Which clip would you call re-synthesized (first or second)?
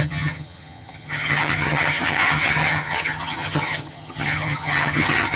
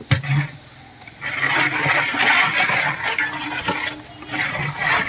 first